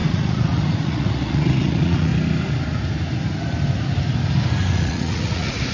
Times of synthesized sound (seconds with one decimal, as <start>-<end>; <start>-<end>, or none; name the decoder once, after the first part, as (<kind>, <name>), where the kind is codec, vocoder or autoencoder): 0.0-2.1 (vocoder, Vocos); 4.7-5.7